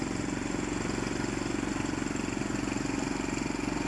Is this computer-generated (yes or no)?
no